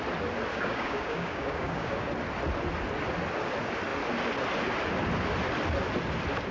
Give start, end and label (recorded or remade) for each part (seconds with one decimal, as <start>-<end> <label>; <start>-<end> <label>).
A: 0.0-0.5 recorded; 0.5-2.1 remade; 2.1-6.5 recorded